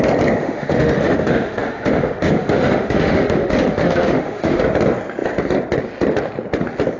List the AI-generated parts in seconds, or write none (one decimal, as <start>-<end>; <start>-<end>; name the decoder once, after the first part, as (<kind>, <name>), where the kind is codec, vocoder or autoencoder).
0.4-4.6 (autoencoder, DAC-VAE)

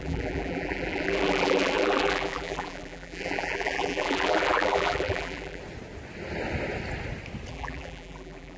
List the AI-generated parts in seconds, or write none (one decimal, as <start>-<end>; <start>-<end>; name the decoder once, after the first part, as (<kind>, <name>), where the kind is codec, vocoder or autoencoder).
0.0-5.6 (vocoder, BigVGAN v2); 7.5-8.6

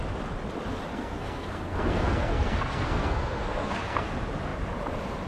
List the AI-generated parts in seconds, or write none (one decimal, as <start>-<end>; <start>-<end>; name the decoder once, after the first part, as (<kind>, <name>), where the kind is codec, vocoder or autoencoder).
0.9-4.1 (codec, SNAC)

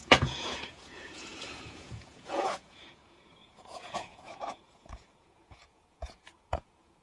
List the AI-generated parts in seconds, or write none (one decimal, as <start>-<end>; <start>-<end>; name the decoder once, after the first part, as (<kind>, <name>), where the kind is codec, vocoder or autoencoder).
0.0-7.0 (vocoder, Vocos)

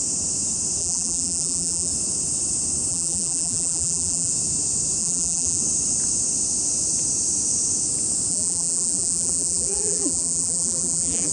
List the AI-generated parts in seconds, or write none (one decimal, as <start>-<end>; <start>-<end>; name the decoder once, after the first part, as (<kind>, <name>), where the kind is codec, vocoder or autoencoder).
0.8-1.9 (vocoder, BigVGAN v2); 2.9-4.3; 5.0-5.6; 8.3-11.3

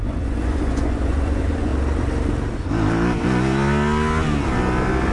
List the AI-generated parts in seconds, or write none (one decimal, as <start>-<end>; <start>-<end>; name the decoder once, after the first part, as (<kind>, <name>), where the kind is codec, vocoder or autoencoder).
0.0-1.7 (vocoder, Vocos)